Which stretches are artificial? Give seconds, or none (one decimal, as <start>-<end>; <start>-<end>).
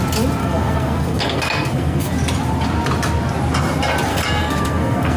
0.4-2.1; 4.1-5.2